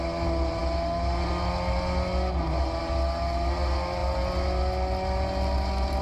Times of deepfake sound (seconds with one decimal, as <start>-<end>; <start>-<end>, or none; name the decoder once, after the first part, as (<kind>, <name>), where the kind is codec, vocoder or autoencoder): none